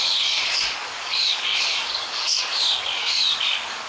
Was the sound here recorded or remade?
remade